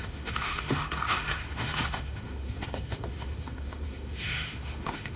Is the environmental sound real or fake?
fake